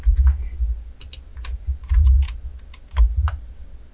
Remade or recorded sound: recorded